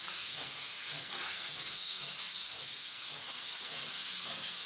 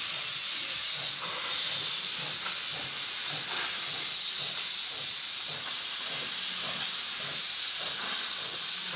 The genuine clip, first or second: second